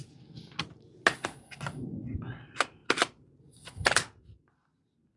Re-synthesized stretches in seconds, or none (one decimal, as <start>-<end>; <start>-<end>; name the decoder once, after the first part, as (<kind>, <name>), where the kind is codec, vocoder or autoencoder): none